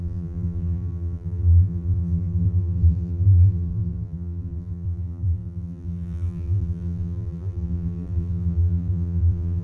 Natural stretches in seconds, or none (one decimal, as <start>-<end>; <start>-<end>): none